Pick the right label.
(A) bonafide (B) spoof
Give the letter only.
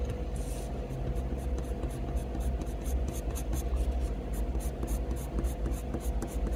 A